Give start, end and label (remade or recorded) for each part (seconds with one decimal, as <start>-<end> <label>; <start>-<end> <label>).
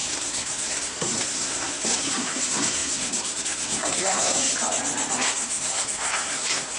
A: 0.0-4.5 remade; 4.5-5.1 recorded; 5.1-6.8 remade